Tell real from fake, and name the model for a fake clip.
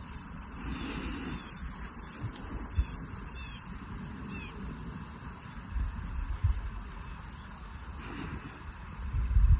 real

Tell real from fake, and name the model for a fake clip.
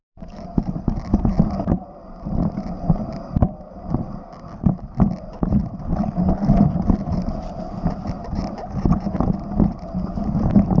real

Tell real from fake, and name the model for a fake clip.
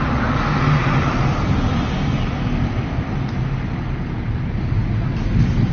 real